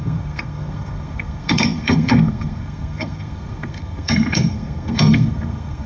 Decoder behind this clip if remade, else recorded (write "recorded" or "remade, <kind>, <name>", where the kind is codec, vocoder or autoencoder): remade, codec, SNAC